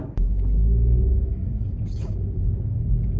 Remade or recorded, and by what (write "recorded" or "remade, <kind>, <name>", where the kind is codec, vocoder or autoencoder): remade, codec, DAC